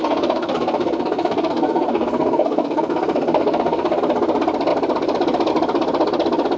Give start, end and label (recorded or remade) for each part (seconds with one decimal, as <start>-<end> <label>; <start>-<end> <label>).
0.0-4.0 remade; 4.0-6.6 recorded